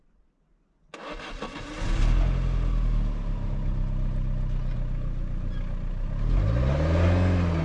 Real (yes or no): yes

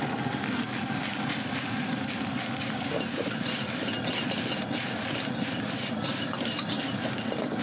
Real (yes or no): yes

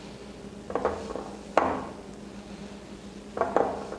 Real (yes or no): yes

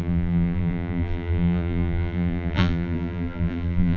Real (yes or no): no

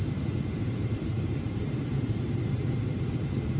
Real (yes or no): no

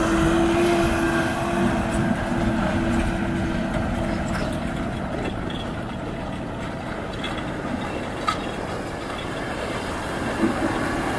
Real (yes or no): yes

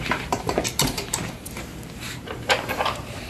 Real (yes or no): no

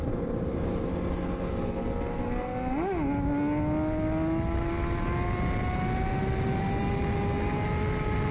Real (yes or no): yes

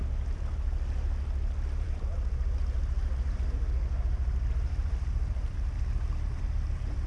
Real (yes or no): no